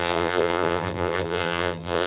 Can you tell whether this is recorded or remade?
remade